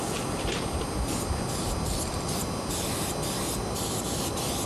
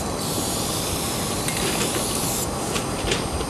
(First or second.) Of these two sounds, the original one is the first